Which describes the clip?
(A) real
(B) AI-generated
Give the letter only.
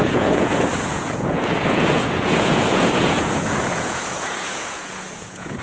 B